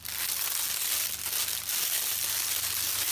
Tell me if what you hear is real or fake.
real